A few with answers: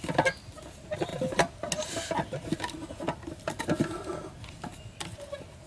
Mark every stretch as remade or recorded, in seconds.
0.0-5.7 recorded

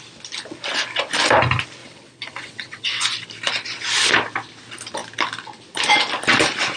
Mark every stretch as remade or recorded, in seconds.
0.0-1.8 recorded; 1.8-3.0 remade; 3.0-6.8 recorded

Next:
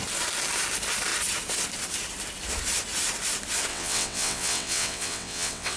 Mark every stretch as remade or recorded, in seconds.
0.0-3.7 recorded; 3.7-5.8 remade

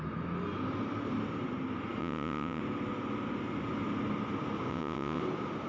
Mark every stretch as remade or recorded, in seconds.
0.0-2.0 recorded; 2.0-2.6 remade; 2.6-4.7 recorded; 4.7-5.2 remade; 5.2-5.7 recorded

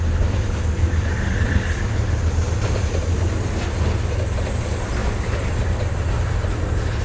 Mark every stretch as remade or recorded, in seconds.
0.0-7.0 recorded

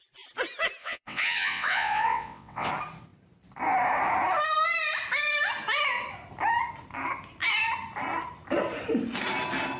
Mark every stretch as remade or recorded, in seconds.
0.0-0.8 recorded; 0.8-2.7 remade; 2.7-9.8 recorded

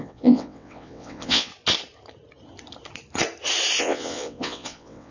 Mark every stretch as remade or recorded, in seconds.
0.0-1.5 remade; 1.5-3.8 recorded; 3.8-5.1 remade

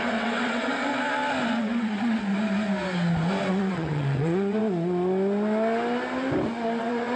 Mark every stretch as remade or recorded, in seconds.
0.0-0.9 remade; 0.9-1.5 recorded; 1.5-2.3 remade; 2.3-3.5 recorded; 3.5-4.6 remade; 4.6-6.8 recorded; 6.8-7.2 remade